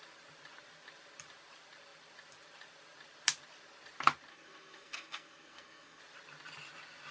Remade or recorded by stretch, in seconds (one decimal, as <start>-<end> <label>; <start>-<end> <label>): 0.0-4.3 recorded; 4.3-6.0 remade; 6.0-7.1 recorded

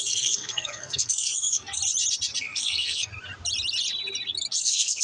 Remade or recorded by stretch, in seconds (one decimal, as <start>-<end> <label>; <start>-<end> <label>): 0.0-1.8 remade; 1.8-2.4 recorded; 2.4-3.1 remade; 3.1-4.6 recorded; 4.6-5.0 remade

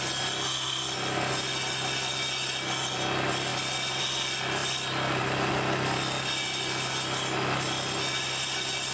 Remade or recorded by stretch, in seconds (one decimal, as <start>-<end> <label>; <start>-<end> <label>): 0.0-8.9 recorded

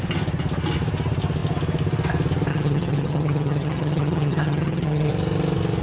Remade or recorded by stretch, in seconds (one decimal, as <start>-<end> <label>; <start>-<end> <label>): 0.0-2.5 recorded; 2.5-5.1 remade; 5.1-5.8 recorded